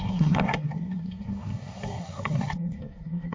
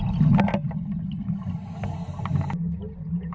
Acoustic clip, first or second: second